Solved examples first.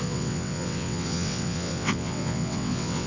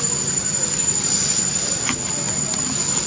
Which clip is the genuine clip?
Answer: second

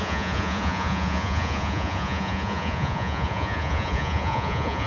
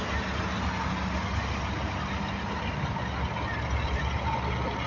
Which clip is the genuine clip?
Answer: second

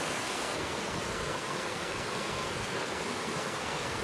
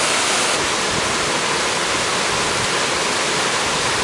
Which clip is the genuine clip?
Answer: second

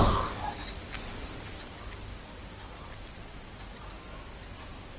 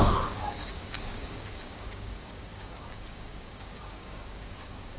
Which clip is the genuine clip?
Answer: first